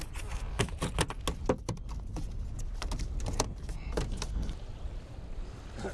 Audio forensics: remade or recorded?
recorded